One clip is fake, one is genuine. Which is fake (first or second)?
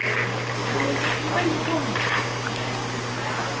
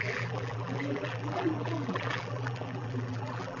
second